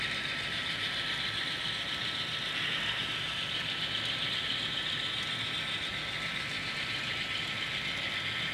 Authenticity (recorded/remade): recorded